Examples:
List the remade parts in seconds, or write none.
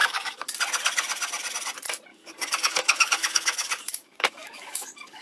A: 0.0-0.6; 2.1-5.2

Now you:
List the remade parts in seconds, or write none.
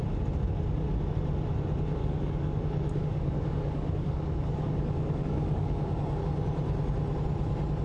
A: 2.0-6.2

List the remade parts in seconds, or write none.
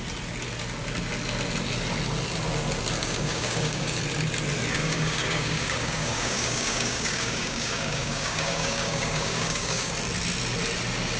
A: 3.0-4.0; 4.8-9.9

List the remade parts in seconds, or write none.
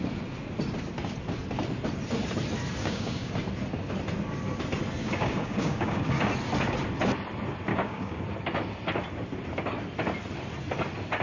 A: 2.8-3.3; 5.0-6.2; 7.7-8.2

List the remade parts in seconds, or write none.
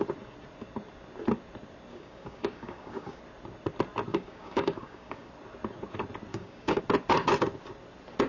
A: 1.9-3.2; 4.1-5.3; 6.3-6.8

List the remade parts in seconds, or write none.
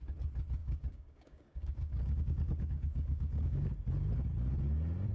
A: 0.6-3.7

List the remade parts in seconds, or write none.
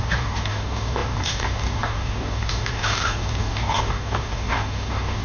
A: 0.0-5.2